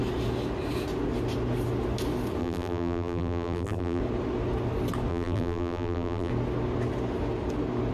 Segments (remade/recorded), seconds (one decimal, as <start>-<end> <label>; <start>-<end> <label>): 0.0-2.4 recorded; 2.4-4.0 remade; 4.0-5.1 recorded; 5.1-6.3 remade; 6.3-7.9 recorded